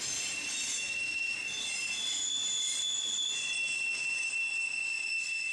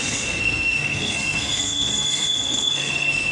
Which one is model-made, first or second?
second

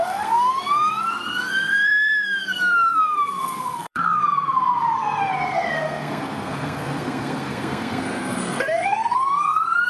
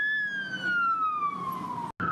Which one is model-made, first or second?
first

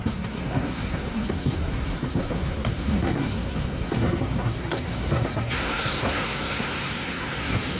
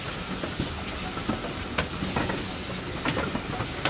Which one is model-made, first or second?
first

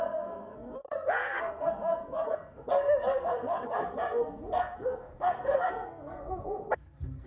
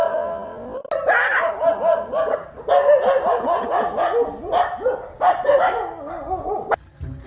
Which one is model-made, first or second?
first